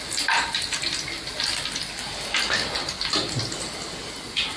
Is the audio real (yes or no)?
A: yes